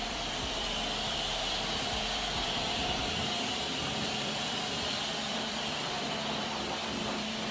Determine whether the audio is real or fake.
fake